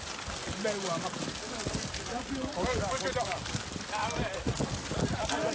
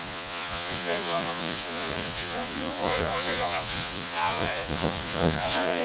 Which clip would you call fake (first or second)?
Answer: second